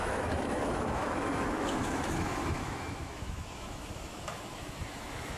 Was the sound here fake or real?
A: fake